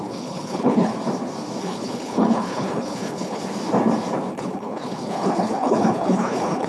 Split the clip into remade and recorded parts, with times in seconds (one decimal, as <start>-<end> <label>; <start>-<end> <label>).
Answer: 0.0-0.9 remade; 0.9-1.6 recorded; 1.6-3.4 remade; 3.4-4.3 recorded; 4.3-6.7 remade